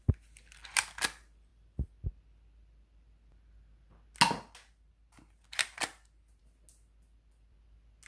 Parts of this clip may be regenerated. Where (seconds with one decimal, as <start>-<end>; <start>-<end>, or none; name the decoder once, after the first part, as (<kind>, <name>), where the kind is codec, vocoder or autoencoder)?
none